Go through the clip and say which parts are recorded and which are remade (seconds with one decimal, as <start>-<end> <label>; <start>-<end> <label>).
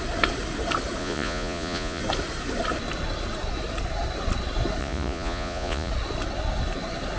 0.0-1.0 recorded; 1.0-2.0 remade; 2.0-4.8 recorded; 4.8-5.9 remade; 5.9-7.2 recorded